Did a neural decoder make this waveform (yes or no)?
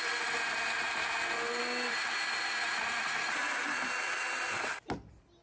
no